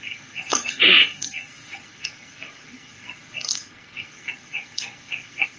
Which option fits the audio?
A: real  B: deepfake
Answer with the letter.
B